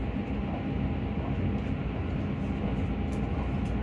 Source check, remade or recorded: recorded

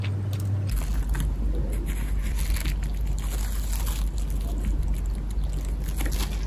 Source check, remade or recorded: recorded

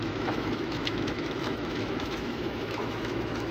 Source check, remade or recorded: remade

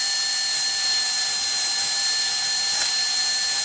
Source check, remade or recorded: recorded